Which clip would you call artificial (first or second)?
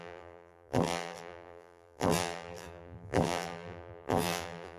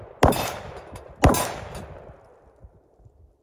first